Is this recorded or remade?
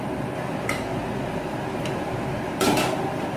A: remade